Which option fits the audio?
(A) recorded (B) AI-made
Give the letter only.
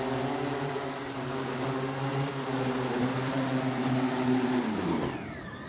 A